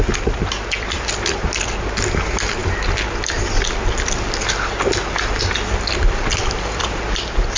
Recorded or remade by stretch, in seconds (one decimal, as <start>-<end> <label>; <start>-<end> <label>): 0.0-7.6 recorded